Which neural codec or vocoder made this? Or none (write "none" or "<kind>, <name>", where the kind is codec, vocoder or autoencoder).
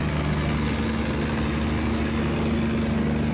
none